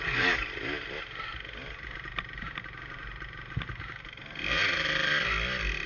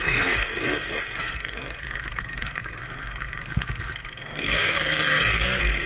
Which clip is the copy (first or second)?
second